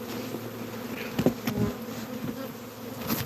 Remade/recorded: recorded